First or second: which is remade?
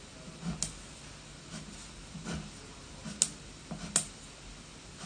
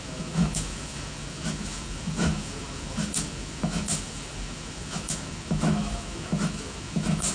second